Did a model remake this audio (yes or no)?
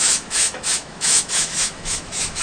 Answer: yes